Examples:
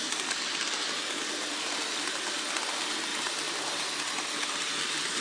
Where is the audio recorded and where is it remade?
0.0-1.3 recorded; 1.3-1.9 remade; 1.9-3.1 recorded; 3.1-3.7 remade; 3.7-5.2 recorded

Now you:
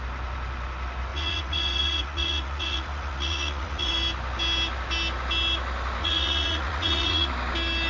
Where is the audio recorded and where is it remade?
0.0-1.1 recorded; 1.1-3.9 remade; 3.9-6.0 recorded; 6.0-7.3 remade; 7.3-7.9 recorded

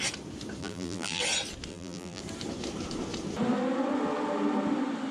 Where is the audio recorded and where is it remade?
0.0-0.6 recorded; 0.6-1.2 remade; 1.2-1.7 recorded; 1.7-2.2 remade; 2.2-5.1 recorded

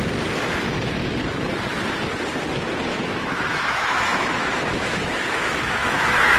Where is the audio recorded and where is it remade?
0.0-2.9 recorded; 2.9-6.4 remade

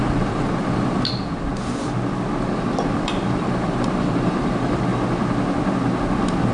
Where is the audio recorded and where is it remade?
0.0-1.5 remade; 1.5-2.4 recorded; 2.4-4.9 remade; 4.9-6.5 recorded

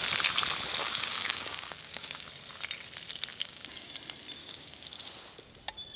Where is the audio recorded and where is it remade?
0.0-0.8 recorded; 0.8-2.3 remade; 2.3-3.3 recorded; 3.3-3.9 remade; 3.9-4.4 recorded; 4.4-5.1 remade; 5.1-6.0 recorded

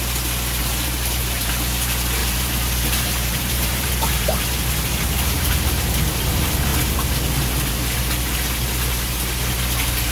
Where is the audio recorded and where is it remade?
0.0-0.6 recorded; 0.6-1.5 remade; 1.5-2.2 recorded; 2.2-5.5 remade; 5.5-10.1 recorded

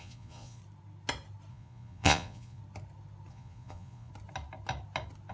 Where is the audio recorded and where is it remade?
0.0-0.6 remade; 0.6-1.5 recorded; 1.5-2.6 remade; 2.6-3.3 recorded; 3.3-4.1 remade; 4.1-5.3 recorded